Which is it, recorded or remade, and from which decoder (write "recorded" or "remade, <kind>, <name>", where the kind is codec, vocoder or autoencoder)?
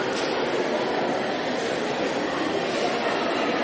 recorded